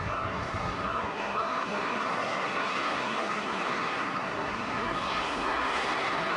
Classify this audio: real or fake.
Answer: fake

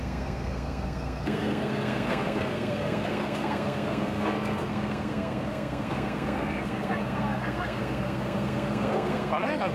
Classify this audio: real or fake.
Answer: fake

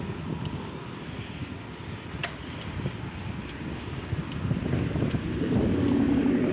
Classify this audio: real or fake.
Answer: real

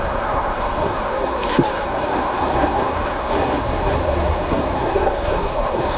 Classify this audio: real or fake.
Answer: fake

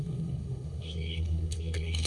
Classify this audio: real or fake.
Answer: fake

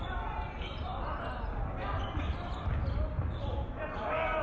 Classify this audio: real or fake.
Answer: real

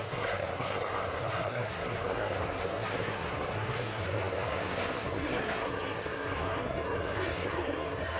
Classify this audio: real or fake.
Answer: fake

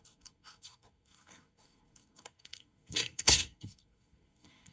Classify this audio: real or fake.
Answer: fake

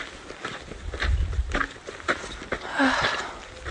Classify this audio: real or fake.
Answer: real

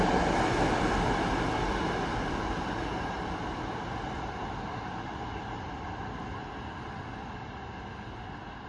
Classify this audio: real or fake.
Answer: real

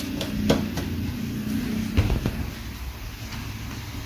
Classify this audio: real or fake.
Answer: real